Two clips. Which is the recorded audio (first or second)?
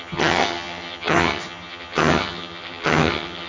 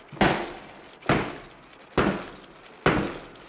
second